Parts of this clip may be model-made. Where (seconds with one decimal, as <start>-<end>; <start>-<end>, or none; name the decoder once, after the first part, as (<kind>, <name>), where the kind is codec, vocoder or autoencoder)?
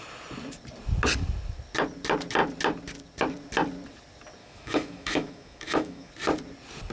4.4-6.1 (autoencoder, DAC-VAE)